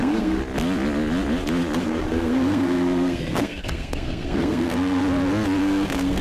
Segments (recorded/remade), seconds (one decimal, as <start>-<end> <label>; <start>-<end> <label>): 0.0-0.4 remade; 0.4-1.8 recorded; 1.8-5.0 remade; 5.0-5.6 recorded; 5.6-6.2 remade